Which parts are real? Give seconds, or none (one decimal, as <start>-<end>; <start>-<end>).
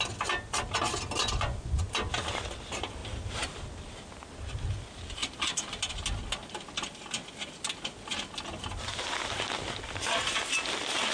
0.0-1.2; 1.9-11.1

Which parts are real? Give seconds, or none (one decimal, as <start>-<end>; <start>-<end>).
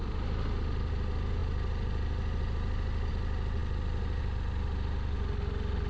0.0-5.9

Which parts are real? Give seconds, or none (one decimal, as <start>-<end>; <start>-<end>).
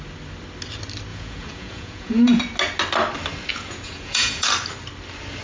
0.0-1.1; 2.4-3.5; 4.5-5.4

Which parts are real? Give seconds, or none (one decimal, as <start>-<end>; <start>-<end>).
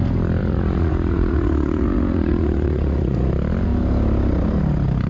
0.0-0.4; 3.3-5.1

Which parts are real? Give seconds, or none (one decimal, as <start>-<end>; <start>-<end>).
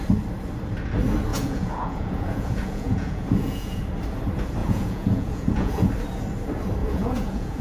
0.0-1.3; 3.8-4.6; 5.9-6.8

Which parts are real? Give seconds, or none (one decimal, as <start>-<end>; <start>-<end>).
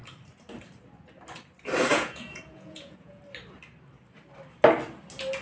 0.0-1.9; 3.2-5.4